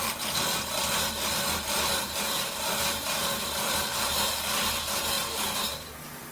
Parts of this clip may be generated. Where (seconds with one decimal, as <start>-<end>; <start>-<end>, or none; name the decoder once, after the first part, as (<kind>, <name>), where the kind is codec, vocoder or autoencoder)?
none